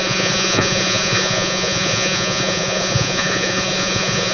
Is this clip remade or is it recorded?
remade